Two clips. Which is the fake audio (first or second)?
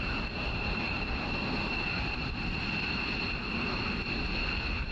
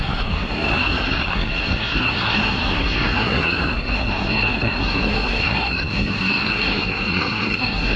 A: second